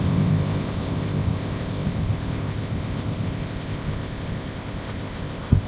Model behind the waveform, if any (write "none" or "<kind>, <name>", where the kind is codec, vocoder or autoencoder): codec, ZipCodec